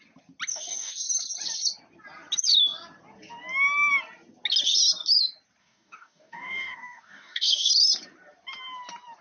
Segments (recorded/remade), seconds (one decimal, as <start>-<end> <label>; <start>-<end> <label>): 0.0-0.5 recorded; 0.5-1.1 remade; 1.1-5.6 recorded; 5.6-7.7 remade; 7.7-9.2 recorded

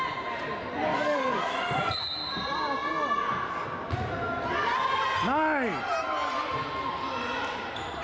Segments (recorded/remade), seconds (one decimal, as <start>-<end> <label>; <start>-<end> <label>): 0.0-0.9 recorded; 0.9-1.4 remade; 1.4-8.0 recorded